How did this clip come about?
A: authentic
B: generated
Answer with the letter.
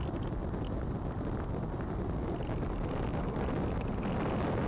A